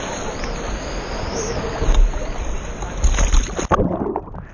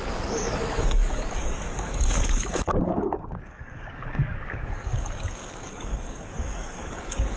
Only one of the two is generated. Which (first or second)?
second